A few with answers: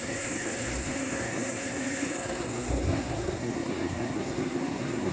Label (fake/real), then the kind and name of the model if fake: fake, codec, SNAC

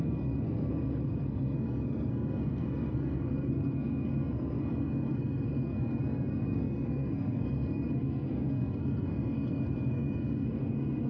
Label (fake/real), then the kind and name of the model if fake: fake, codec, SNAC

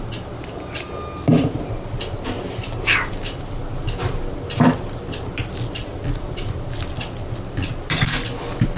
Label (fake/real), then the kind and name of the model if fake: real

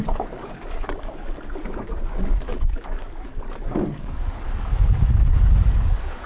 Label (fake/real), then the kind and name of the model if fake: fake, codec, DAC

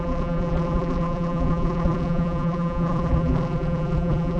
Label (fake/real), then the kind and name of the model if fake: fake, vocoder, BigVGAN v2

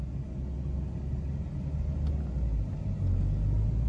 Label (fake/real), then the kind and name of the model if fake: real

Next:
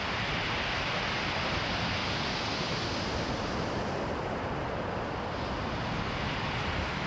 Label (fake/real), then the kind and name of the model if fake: real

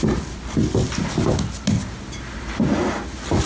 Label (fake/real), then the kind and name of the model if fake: real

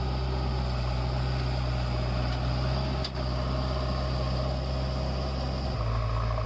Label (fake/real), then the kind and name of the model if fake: real